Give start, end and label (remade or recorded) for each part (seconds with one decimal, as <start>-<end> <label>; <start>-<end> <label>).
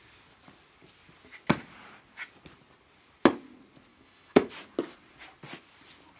0.0-3.9 recorded; 3.9-4.5 remade; 4.5-6.2 recorded